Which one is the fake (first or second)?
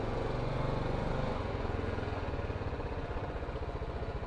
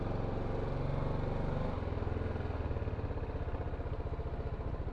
first